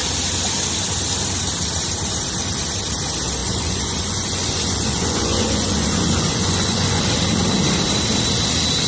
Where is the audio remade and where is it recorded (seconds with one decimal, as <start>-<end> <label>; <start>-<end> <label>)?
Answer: 0.0-3.4 recorded; 3.4-7.0 remade; 7.0-8.9 recorded